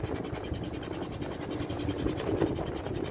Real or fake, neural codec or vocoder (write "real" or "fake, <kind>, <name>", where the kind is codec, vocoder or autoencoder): real